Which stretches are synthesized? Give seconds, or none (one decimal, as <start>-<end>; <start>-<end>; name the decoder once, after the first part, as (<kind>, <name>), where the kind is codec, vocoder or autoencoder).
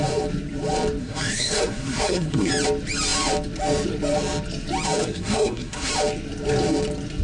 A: 1.0-2.5 (codec, SNAC); 5.0-5.9